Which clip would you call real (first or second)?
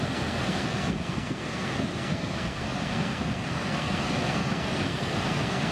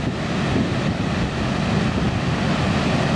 second